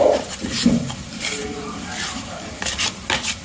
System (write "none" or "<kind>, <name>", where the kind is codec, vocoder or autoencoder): none